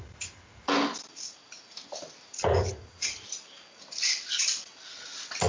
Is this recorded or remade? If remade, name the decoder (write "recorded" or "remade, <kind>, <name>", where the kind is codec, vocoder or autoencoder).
recorded